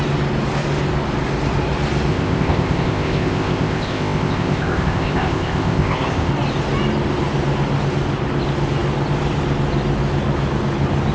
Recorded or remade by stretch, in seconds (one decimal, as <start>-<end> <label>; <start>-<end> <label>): 0.0-2.1 recorded; 2.1-6.3 remade; 6.3-11.1 recorded